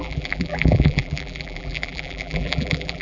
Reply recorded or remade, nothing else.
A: remade